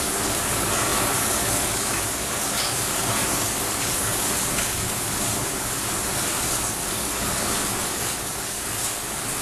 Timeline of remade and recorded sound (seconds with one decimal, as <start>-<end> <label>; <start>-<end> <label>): 0.0-9.4 remade